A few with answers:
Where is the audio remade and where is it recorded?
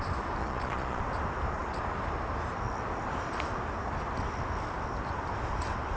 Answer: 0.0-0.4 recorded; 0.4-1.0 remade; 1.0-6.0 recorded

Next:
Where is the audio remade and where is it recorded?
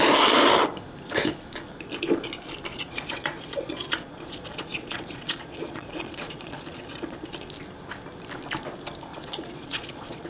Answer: 0.0-2.7 recorded; 2.7-7.3 remade; 7.3-9.1 recorded; 9.1-10.3 remade